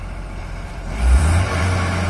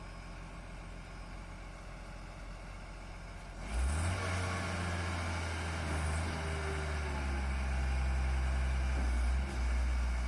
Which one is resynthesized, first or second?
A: first